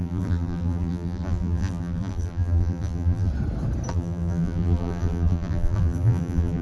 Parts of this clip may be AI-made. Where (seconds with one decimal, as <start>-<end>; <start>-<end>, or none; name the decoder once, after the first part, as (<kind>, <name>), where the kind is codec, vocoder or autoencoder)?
0.0-3.3 (vocoder, BigVGAN v2); 3.9-6.6